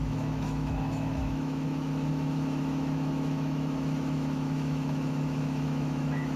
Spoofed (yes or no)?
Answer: yes